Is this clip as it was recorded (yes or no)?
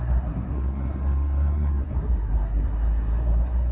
no